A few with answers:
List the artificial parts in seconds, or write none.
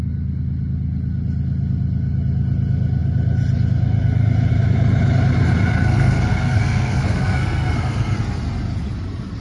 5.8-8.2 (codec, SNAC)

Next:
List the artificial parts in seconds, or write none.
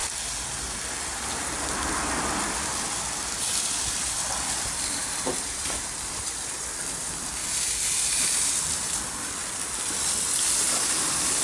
0.6-7.4 (vocoder, BigVGAN v2); 8.6-11.4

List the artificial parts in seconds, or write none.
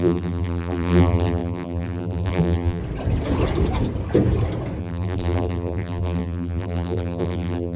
0.0-2.8 (vocoder, BigVGAN v2); 4.8-7.8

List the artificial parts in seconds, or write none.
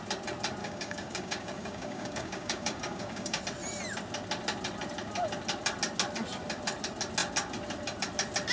0.6-3.4 (codec, DAC)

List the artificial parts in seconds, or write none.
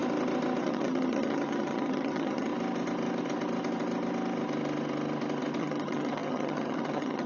0.6-2.5 (vocoder, HiFi-GAN); 5.6-7.3